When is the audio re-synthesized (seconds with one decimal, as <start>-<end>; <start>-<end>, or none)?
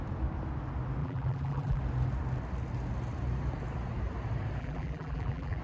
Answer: 1.0-1.8; 4.6-5.6